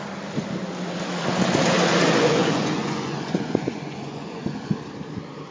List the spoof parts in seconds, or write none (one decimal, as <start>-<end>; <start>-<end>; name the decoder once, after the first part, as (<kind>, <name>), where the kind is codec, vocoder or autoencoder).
2.2-4.7 (vocoder, Vocos)

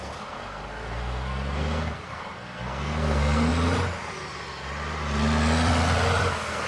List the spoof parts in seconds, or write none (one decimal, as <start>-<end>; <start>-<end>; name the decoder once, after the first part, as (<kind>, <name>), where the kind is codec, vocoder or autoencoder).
0.0-3.5 (codec, SNAC); 6.2-6.7

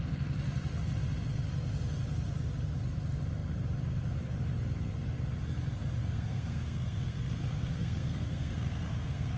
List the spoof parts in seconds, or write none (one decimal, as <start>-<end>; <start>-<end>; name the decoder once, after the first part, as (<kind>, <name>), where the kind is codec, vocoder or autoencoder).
6.0-9.4 (codec, SNAC)